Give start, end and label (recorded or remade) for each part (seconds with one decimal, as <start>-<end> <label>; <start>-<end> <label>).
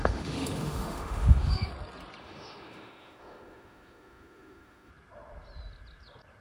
0.0-1.7 remade; 1.7-2.2 recorded; 2.2-4.9 remade; 4.9-6.4 recorded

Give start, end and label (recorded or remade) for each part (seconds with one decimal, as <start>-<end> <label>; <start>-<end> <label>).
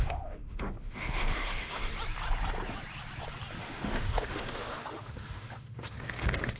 0.0-1.9 remade; 1.9-3.6 recorded; 3.6-6.6 remade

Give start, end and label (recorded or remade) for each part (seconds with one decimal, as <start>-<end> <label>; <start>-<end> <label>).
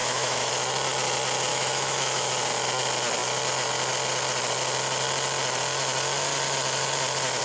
0.0-0.5 remade; 0.5-1.5 recorded; 1.5-2.3 remade; 2.3-7.4 recorded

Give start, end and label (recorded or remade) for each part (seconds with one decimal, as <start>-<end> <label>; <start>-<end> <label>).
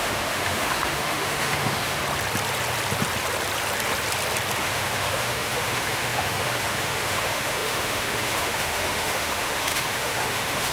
0.0-2.0 remade; 2.0-4.6 recorded; 4.6-10.7 remade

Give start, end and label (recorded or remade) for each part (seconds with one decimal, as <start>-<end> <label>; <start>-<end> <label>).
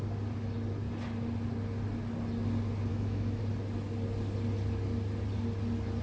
0.0-2.9 recorded; 2.9-3.4 remade; 3.4-6.0 recorded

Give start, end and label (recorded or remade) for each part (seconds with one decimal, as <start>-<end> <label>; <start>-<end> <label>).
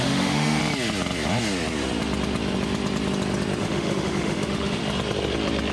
0.0-0.6 remade; 0.6-3.6 recorded; 3.6-4.8 remade; 4.8-5.7 recorded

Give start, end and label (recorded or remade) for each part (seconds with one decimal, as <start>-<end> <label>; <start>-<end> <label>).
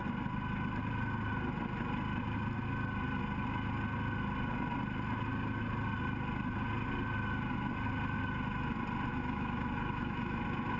0.0-9.1 recorded; 9.1-10.4 remade; 10.4-10.8 recorded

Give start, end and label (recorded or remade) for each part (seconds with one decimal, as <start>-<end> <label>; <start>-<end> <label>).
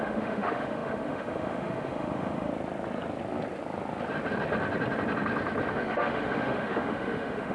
0.0-2.5 remade; 2.5-5.7 recorded; 5.7-7.5 remade